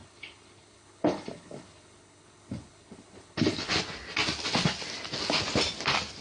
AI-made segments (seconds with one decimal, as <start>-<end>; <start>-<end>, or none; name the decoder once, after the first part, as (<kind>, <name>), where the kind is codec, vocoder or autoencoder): 0.0-3.7 (codec, HILCodec)